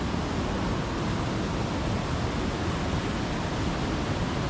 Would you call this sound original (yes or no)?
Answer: yes